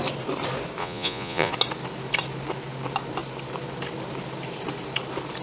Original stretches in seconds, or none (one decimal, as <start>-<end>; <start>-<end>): 0.0-0.8; 1.5-5.4

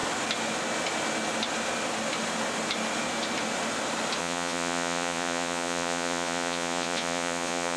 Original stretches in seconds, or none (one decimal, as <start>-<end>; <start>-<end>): 0.0-4.2

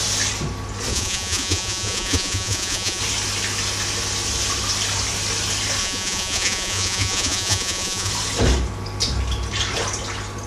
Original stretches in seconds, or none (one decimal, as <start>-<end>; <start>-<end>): 0.0-0.9; 3.0-5.8; 8.1-10.5

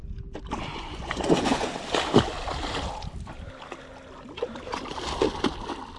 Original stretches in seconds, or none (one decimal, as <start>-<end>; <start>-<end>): 0.0-0.7; 1.7-6.0

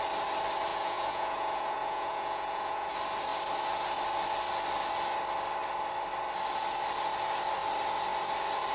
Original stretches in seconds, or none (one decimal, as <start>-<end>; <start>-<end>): 0.0-0.7; 2.9-8.7

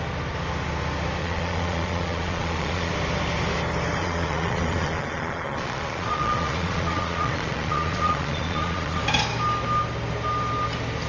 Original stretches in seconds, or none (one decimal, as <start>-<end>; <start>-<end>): 0.0-1.2; 2.9-4.0; 9.0-11.1

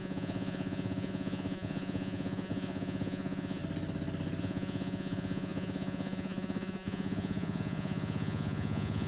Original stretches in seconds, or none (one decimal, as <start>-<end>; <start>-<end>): 3.6-4.4